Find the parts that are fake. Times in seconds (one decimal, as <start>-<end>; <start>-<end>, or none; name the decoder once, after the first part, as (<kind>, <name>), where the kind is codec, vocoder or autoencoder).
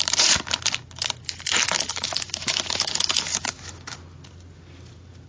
1.9-4.0 (autoencoder, DAC-VAE)